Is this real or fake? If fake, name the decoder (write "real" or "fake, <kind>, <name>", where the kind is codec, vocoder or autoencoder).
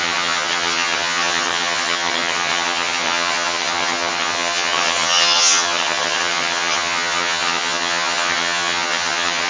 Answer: fake, vocoder, HiFi-GAN